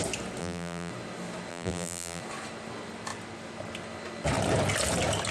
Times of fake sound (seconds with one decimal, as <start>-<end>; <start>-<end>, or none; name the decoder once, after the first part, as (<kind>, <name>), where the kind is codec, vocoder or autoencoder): 0.4-0.9 (vocoder, BigVGAN v2); 1.5-2.2